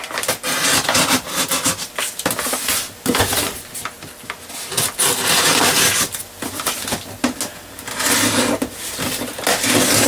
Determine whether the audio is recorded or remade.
recorded